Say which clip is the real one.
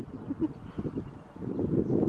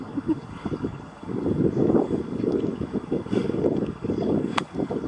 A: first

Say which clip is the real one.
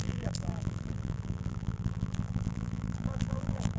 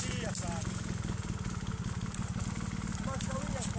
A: second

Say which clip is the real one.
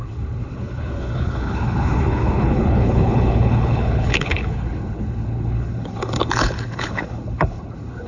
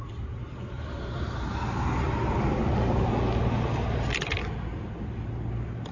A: second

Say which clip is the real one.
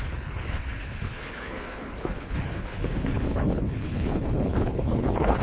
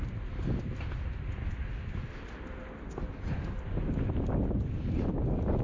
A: second